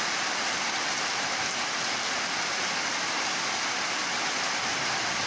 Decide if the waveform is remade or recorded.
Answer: recorded